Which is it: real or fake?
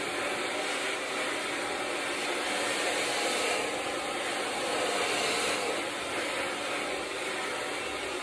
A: real